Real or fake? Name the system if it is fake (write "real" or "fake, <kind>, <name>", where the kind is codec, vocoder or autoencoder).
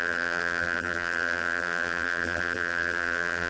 fake, vocoder, BigVGAN v2